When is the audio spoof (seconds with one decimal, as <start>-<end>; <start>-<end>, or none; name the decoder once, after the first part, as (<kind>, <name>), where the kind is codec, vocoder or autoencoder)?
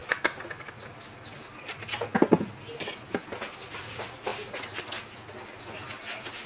none